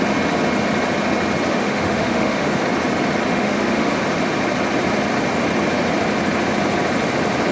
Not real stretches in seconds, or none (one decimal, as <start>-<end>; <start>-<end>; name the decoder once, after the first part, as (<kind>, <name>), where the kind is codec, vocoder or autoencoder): 1.5-2.6 (autoencoder, DAC-VAE); 3.3-3.9